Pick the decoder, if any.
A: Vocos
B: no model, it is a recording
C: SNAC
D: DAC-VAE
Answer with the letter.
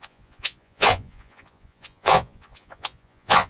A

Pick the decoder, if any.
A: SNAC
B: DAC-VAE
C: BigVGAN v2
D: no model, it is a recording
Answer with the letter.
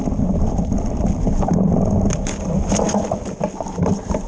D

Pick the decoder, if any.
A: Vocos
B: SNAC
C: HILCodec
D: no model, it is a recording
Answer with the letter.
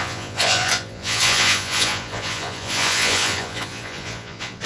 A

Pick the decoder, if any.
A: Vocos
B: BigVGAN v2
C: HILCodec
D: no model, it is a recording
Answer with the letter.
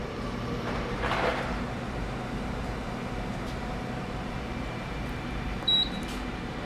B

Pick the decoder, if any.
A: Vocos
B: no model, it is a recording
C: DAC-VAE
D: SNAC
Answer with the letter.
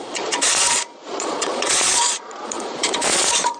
A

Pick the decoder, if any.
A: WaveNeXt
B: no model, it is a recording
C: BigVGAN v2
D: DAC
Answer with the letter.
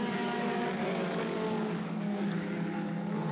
D